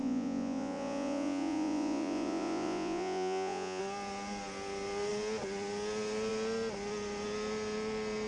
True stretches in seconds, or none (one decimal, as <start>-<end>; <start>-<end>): 3.8-8.3